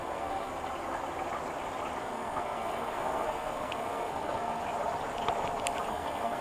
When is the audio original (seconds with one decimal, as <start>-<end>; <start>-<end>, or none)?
0.5-2.0; 4.6-5.9